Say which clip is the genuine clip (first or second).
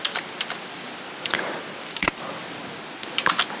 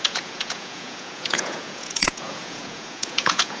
first